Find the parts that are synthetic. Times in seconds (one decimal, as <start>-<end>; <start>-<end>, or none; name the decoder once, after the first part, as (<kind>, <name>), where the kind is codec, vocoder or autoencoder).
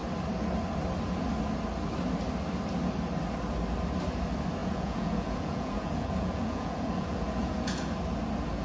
4.6-7.9 (vocoder, Vocos)